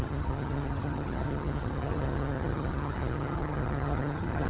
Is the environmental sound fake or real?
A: fake